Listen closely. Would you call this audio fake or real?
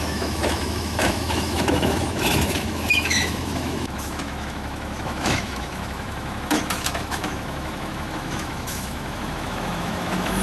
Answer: fake